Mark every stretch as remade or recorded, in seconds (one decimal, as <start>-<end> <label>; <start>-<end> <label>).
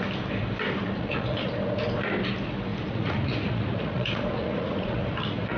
0.0-0.8 recorded; 0.8-1.5 remade; 1.5-2.7 recorded; 2.7-5.6 remade